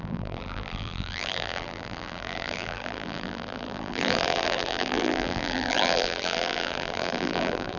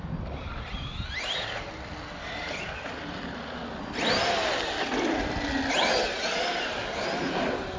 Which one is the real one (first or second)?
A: second